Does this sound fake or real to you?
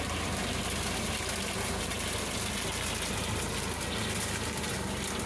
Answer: real